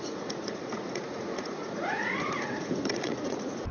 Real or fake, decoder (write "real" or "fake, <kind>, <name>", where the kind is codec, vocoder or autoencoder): fake, vocoder, Vocos